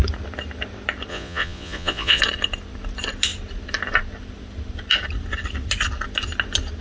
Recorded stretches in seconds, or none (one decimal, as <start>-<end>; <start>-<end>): 0.0-1.1; 2.2-6.8